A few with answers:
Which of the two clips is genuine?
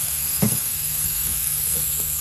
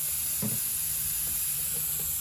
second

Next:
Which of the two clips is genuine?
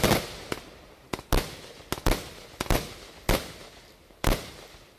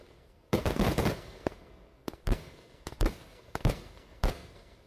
first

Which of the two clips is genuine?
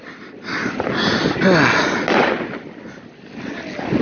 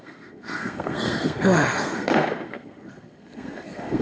first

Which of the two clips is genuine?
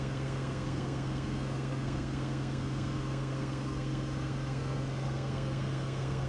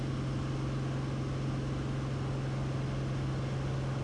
second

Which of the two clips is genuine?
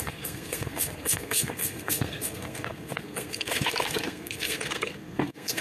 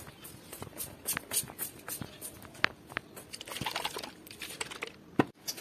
second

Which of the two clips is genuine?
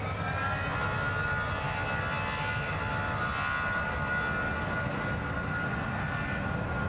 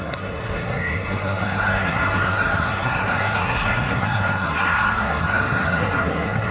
first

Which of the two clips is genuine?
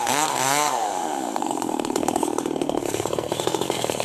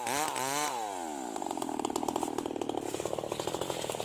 second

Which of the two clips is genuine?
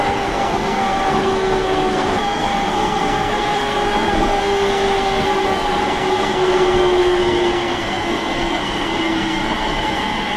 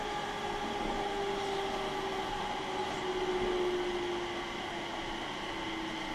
second